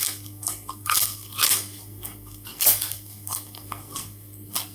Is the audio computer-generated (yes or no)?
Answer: yes